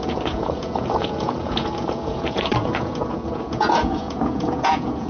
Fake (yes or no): yes